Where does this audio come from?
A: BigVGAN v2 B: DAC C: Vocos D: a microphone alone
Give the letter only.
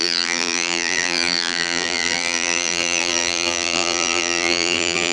A